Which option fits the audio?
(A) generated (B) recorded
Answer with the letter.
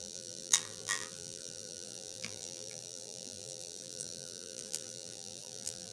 A